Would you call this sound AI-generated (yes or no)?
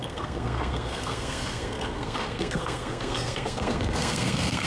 yes